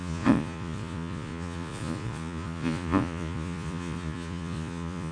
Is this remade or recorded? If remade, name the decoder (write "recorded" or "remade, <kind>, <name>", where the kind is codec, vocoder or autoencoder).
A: remade, vocoder, Vocos